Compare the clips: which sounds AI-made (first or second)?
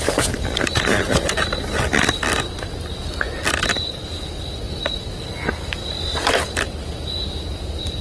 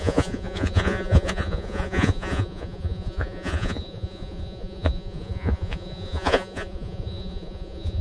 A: second